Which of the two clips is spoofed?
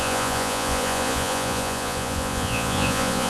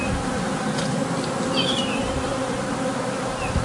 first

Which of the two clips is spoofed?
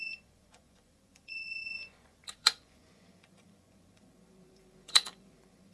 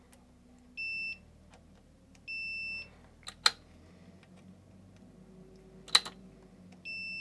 first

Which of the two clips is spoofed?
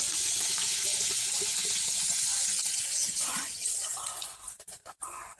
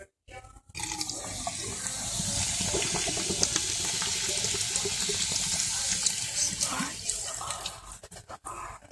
first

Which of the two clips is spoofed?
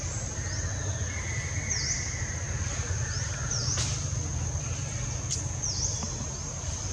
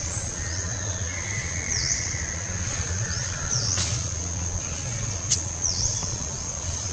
second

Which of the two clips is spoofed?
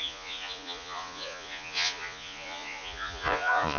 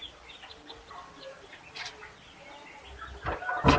first